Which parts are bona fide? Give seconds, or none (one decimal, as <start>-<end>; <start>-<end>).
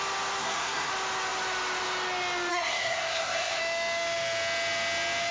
0.0-0.4; 0.9-2.5; 3.6-5.3